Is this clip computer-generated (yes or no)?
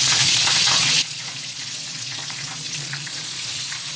yes